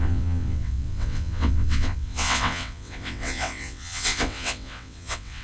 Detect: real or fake fake